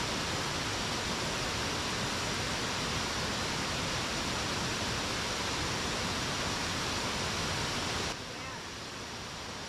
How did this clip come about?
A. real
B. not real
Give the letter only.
A